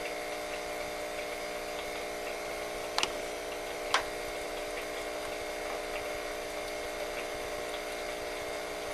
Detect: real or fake real